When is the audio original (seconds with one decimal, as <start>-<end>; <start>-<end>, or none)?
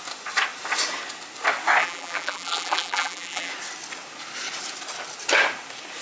0.0-1.8; 3.5-6.0